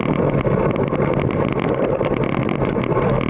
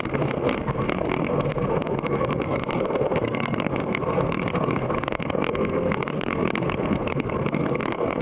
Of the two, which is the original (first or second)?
first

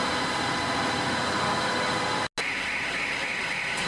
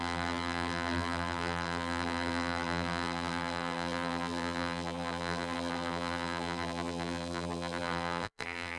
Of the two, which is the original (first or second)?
first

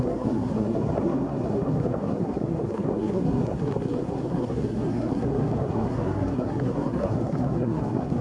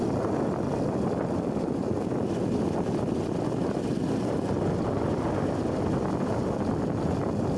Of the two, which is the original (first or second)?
second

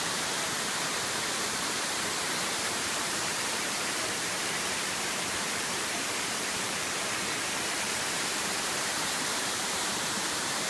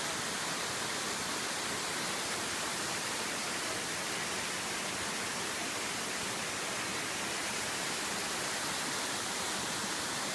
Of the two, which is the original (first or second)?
second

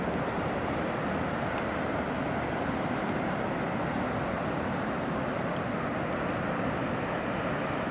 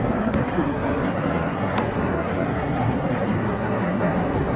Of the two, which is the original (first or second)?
first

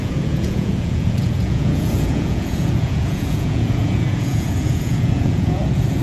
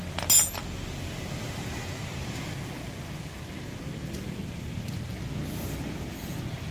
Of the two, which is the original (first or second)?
second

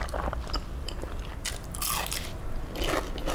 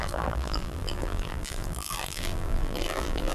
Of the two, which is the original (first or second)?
first